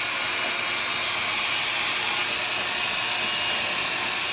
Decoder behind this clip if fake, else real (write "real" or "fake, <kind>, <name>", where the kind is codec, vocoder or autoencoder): real